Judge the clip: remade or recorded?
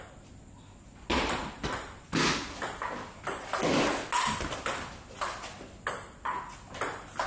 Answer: recorded